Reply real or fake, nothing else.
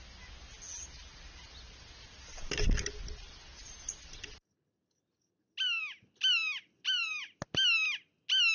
real